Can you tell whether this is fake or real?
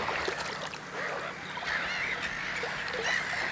real